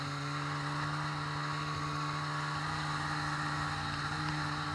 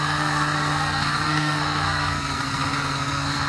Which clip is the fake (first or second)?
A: second